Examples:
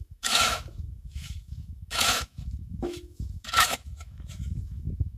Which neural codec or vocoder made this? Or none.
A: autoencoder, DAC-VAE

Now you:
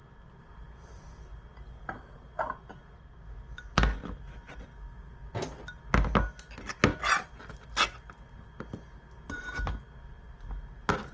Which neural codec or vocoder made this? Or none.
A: none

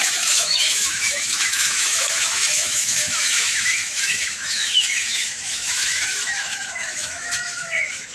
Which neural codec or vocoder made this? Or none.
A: autoencoder, DAC-VAE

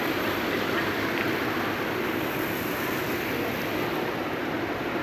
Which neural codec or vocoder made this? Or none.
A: none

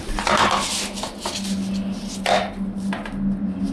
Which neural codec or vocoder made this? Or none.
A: none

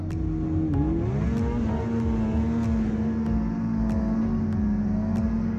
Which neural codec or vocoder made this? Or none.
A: none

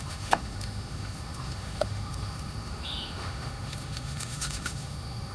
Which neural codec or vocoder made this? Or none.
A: autoencoder, DAC-VAE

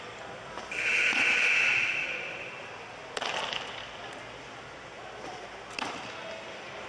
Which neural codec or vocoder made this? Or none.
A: none